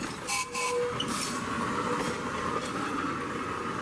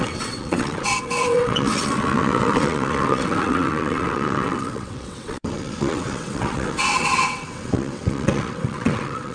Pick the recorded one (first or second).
first